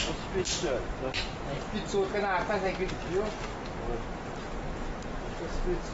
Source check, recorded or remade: recorded